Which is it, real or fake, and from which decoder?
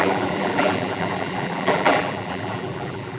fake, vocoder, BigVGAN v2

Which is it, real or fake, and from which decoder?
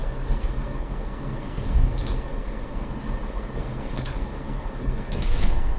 fake, codec, SNAC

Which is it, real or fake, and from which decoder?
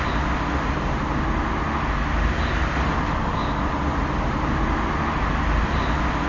real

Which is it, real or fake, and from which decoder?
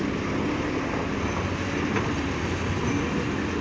real